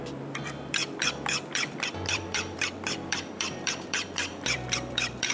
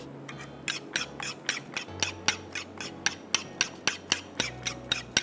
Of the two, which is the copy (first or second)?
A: first